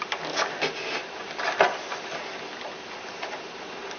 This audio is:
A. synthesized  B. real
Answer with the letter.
B